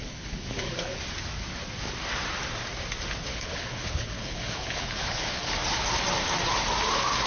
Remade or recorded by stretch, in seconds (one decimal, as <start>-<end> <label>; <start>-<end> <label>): 0.0-1.0 remade; 1.0-3.3 recorded; 3.3-5.5 remade; 5.5-7.3 recorded

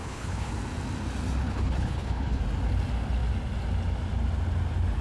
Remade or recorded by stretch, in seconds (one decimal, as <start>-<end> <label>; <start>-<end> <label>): 0.0-0.5 remade; 0.5-1.4 recorded; 1.4-2.4 remade; 2.4-5.0 recorded

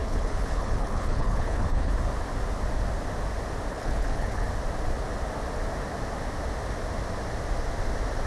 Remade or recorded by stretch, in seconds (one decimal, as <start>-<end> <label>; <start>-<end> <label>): 0.0-1.9 remade; 1.9-3.7 recorded; 3.7-4.5 remade; 4.5-8.3 recorded

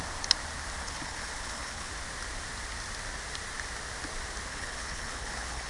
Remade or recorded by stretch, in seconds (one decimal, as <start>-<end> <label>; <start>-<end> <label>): 0.0-0.8 recorded; 0.8-1.9 remade; 1.9-4.5 recorded; 4.5-5.7 remade